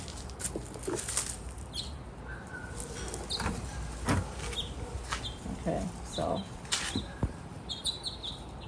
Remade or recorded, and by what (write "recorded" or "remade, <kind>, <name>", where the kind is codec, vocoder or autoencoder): recorded